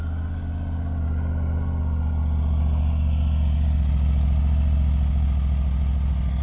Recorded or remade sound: recorded